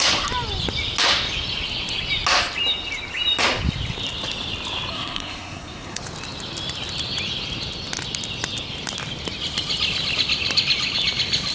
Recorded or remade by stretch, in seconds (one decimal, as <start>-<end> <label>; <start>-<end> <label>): 0.0-4.9 recorded; 4.9-6.0 remade; 6.0-11.5 recorded